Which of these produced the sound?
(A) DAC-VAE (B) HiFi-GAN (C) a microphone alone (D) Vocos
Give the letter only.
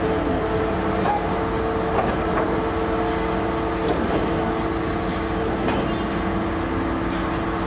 C